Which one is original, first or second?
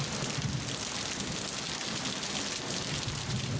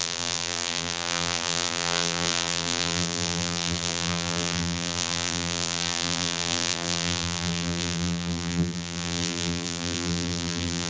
first